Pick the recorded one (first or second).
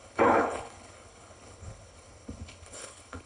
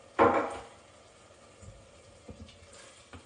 second